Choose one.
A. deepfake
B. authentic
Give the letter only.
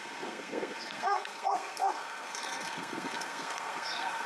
A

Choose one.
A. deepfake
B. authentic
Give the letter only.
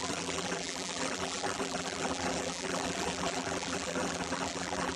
A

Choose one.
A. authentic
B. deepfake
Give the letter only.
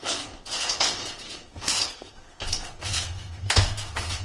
B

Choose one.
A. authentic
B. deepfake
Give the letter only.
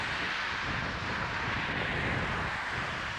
A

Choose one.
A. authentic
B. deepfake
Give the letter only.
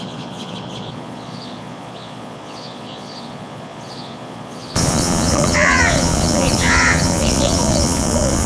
B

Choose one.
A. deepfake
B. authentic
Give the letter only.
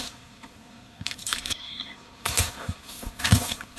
A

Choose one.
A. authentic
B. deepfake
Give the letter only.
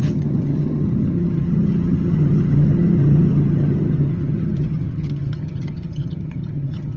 B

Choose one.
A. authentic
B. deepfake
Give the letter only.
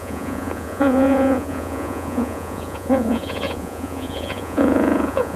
B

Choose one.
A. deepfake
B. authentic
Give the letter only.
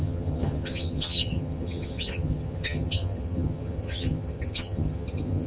A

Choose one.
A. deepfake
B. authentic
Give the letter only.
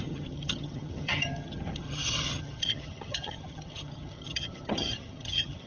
A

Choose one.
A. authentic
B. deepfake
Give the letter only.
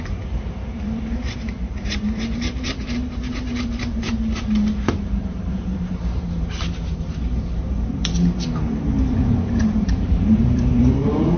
B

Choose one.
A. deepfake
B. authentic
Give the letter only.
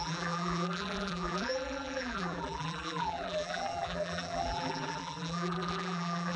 A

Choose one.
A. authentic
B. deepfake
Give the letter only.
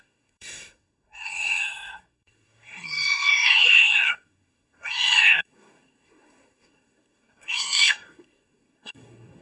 B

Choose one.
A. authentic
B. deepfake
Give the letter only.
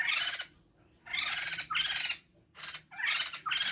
A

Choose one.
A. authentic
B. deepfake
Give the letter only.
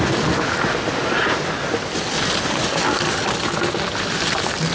A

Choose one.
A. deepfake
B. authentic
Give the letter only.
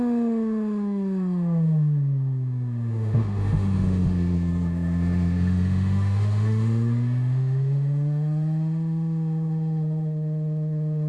A